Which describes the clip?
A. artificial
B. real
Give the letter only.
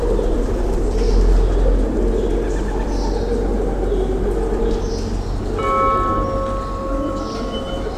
B